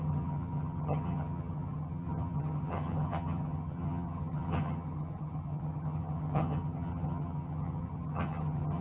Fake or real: fake